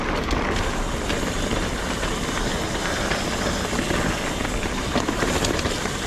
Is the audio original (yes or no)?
yes